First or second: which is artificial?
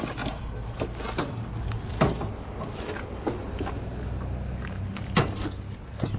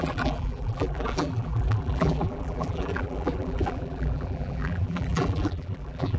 second